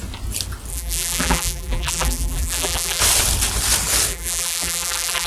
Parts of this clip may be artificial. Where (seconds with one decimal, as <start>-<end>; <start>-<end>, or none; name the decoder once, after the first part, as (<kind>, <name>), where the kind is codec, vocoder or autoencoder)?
0.7-3.0 (vocoder, BigVGAN v2); 4.1-5.3